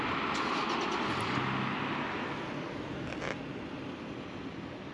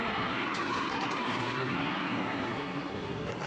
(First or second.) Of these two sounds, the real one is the first